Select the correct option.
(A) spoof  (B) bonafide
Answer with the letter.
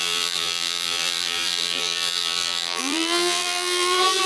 A